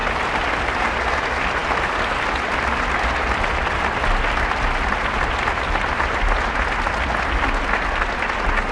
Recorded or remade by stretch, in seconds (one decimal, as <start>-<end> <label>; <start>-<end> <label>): 0.0-8.7 recorded